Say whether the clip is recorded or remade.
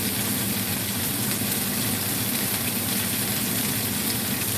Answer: recorded